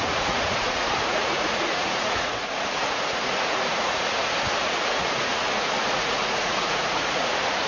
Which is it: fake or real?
fake